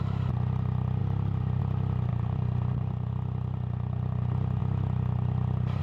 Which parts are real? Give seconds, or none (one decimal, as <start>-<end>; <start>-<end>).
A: 0.0-1.0; 1.6-2.1; 3.1-5.8